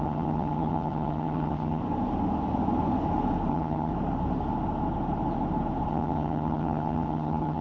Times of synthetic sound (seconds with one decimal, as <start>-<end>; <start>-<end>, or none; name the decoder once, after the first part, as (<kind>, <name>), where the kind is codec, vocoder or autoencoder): 0.0-1.8 (vocoder, HiFi-GAN); 3.5-3.9; 5.9-7.6